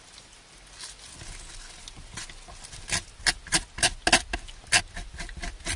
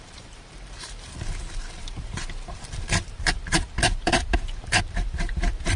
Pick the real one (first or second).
first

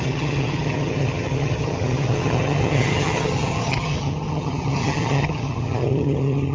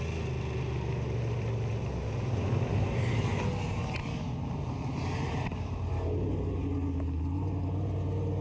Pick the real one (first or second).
second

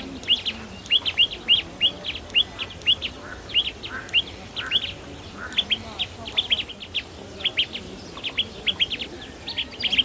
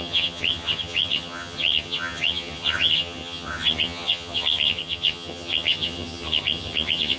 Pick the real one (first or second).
first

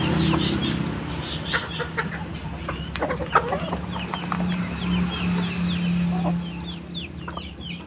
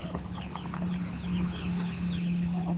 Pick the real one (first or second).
first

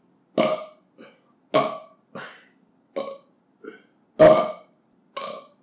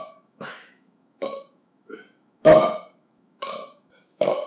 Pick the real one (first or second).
first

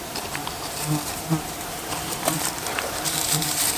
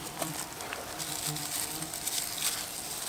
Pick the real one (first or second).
second